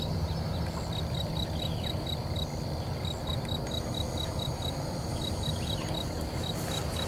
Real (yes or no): yes